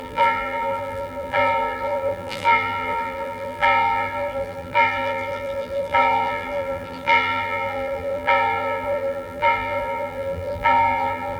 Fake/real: fake